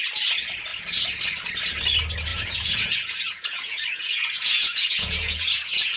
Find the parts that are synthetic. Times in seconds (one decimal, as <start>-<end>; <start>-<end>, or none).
2.3-6.0